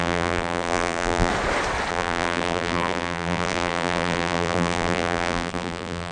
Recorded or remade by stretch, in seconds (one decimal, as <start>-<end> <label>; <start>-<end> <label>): 0.0-1.3 remade; 1.3-1.9 recorded; 1.9-6.1 remade